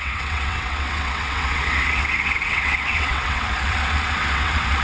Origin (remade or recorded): remade